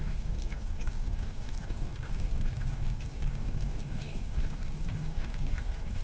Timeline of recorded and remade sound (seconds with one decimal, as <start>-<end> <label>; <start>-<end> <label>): 0.0-6.0 remade